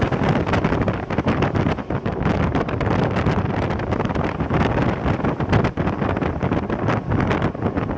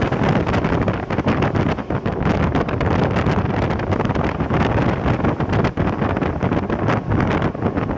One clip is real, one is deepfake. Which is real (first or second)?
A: second